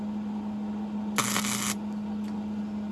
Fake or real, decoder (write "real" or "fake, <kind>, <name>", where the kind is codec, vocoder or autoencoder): real